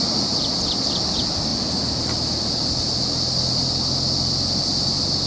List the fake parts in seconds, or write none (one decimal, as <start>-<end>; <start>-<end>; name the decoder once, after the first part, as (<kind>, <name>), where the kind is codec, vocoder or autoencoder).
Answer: none